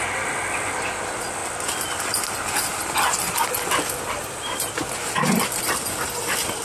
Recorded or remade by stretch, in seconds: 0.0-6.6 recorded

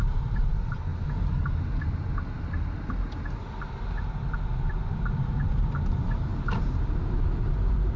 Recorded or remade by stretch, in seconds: 0.0-0.9 remade; 0.9-5.3 recorded; 5.3-6.3 remade; 6.3-7.4 recorded; 7.4-8.0 remade

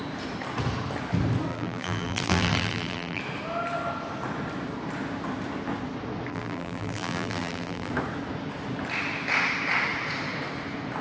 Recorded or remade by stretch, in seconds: 0.0-1.5 recorded; 1.5-3.2 remade; 3.2-6.3 recorded; 6.3-7.9 remade; 7.9-11.0 recorded

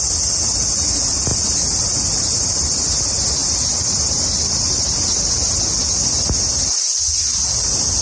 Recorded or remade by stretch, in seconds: 0.0-3.4 recorded; 3.4-5.3 remade; 5.3-8.0 recorded

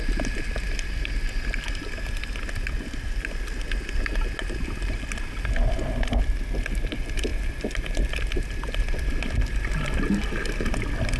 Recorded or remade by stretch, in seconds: 0.0-7.3 recorded; 7.3-8.2 remade; 8.2-11.2 recorded

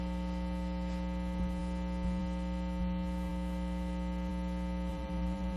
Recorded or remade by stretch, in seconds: 0.0-4.9 recorded; 4.9-5.6 remade